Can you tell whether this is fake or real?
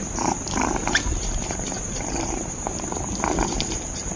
fake